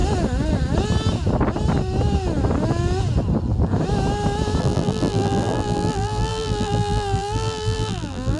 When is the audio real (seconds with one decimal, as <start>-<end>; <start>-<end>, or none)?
0.0-4.6